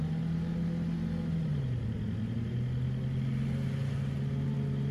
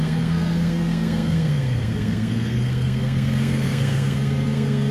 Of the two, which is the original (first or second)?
first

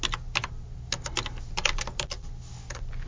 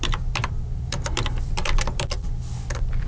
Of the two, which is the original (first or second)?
first